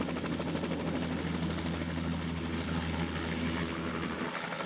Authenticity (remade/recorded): recorded